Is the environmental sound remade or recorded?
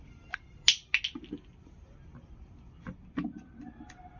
recorded